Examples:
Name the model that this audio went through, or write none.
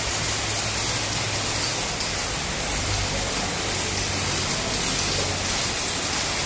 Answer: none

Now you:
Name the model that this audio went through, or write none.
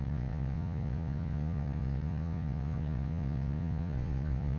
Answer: vocoder, Vocos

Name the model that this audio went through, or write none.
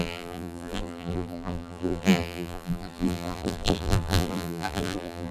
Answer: vocoder, BigVGAN v2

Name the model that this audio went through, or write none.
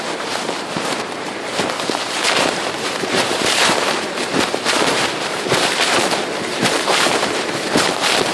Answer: vocoder, BigVGAN v2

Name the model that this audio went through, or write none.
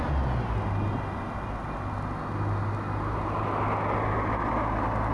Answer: none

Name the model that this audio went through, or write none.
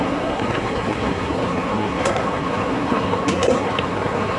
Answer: codec, SNAC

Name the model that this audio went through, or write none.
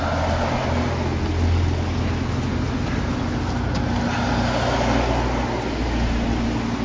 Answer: none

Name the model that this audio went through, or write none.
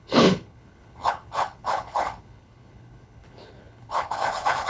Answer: codec, HILCodec